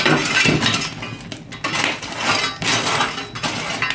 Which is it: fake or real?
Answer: real